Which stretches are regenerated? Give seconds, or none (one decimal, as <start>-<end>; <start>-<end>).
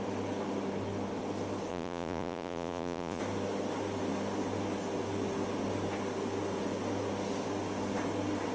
1.7-3.2